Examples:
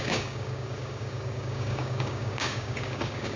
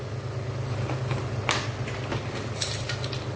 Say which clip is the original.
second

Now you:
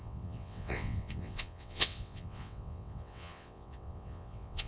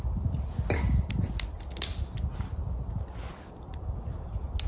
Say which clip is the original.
second